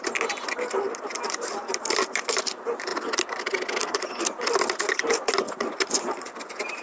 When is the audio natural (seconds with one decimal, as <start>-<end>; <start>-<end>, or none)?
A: 0.0-6.8